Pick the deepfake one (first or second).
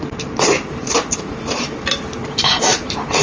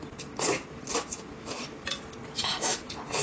first